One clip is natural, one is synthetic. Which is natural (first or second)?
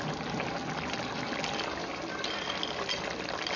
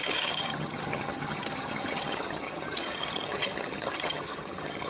first